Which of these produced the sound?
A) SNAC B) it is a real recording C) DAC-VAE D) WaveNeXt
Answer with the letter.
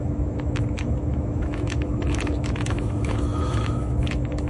C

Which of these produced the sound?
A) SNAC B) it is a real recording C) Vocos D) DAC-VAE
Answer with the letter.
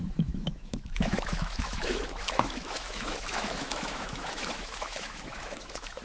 D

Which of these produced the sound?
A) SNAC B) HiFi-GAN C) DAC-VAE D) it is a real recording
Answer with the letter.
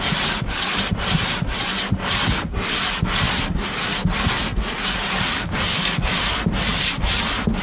D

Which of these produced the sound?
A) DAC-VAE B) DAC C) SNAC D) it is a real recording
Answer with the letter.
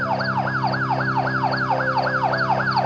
D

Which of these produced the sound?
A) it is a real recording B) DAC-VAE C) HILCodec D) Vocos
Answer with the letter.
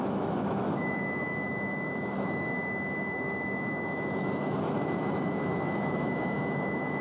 B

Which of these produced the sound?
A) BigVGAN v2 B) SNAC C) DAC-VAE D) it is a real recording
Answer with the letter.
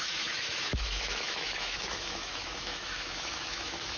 C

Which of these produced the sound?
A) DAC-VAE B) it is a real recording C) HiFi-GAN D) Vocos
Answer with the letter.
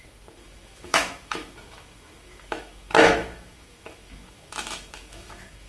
A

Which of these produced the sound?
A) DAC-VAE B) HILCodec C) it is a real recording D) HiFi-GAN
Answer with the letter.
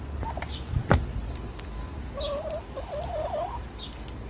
C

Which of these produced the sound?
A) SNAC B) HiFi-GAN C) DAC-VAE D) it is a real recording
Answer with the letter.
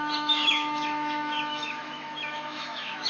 C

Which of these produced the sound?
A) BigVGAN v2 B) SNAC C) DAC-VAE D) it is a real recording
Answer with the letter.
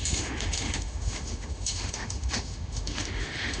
C